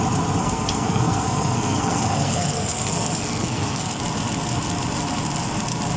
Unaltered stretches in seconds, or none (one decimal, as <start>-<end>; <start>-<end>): 0.0-0.4; 4.0-6.0